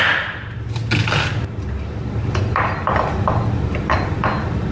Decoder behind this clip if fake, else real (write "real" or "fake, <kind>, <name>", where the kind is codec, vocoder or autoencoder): real